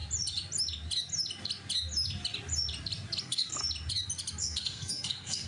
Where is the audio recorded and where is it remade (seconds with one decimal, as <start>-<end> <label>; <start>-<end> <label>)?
0.0-3.2 recorded; 3.2-3.6 remade; 3.6-4.4 recorded; 4.4-5.5 remade